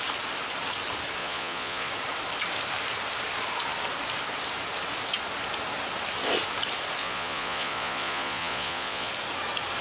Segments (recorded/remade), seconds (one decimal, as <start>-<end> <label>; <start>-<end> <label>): 0.0-1.2 recorded; 1.2-1.9 remade; 1.9-7.0 recorded; 7.0-9.1 remade; 9.1-9.8 recorded